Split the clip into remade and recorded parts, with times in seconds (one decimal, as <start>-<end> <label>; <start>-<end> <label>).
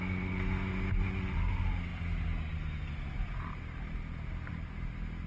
0.0-5.3 recorded